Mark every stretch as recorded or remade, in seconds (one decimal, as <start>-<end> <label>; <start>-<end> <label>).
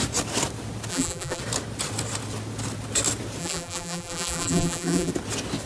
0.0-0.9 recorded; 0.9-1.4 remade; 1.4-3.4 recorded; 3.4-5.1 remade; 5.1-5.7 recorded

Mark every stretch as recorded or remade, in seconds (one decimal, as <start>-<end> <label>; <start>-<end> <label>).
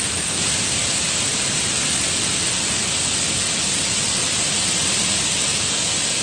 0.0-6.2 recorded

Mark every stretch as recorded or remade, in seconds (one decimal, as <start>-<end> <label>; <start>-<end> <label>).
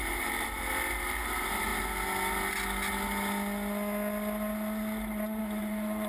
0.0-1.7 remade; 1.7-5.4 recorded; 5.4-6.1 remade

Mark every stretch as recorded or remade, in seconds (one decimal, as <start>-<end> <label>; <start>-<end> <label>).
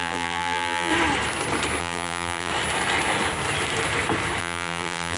0.0-0.9 remade; 0.9-1.8 recorded; 1.8-2.5 remade; 2.5-4.4 recorded; 4.4-5.2 remade